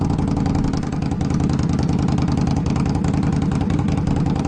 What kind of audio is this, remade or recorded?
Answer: recorded